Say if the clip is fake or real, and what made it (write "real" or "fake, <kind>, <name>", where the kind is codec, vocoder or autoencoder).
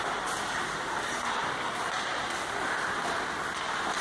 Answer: real